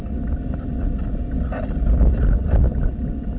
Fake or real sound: real